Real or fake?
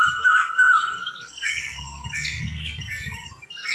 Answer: fake